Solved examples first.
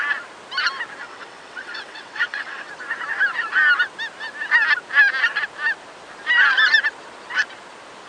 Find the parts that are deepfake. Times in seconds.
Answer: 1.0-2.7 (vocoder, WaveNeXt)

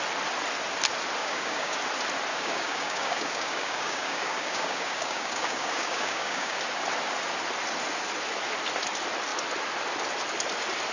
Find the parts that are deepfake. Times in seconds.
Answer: 1.2-1.8 (codec, DAC); 2.3-6.6

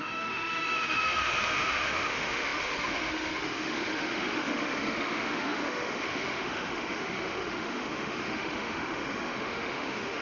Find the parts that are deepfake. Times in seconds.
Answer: 0.0-10.2 (autoencoder, DAC-VAE)

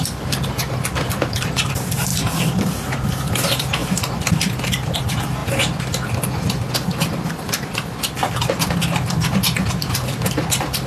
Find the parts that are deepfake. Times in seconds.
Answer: 0.0-5.4 (vocoder, BigVGAN v2); 7.3-10.9